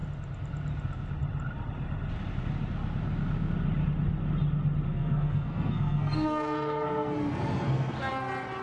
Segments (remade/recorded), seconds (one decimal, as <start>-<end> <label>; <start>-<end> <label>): 0.0-4.9 recorded; 4.9-8.1 remade; 8.1-8.6 recorded